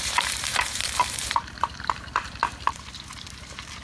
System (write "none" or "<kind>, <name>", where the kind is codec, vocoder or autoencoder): vocoder, BigVGAN v2